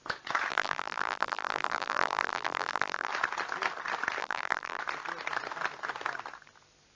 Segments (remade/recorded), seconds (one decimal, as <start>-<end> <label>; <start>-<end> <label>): 0.0-0.5 recorded; 0.5-3.1 remade; 3.1-4.2 recorded; 4.2-4.8 remade; 4.8-7.0 recorded